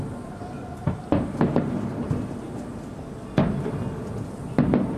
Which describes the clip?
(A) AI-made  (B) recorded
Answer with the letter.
B